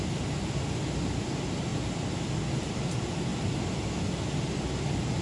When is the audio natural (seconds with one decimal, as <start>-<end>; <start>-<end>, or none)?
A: 0.0-5.2